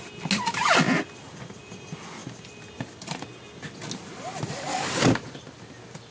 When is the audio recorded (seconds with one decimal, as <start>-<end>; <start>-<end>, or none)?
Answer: 0.0-6.1